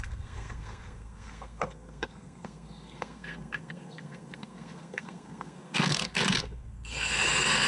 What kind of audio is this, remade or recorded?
remade